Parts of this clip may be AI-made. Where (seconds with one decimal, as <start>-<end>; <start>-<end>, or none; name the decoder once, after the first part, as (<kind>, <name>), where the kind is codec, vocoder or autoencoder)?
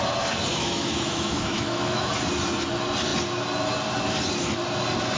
0.5-2.1 (autoencoder, DAC-VAE)